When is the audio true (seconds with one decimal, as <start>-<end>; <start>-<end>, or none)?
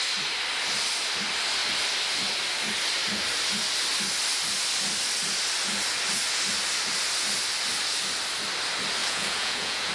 0.0-9.0